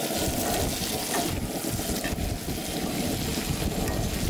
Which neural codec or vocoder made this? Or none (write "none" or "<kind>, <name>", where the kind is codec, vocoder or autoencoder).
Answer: none